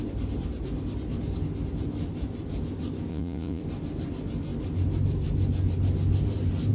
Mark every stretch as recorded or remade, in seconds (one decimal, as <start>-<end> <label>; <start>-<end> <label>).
0.0-3.1 recorded; 3.1-3.6 remade; 3.6-6.7 recorded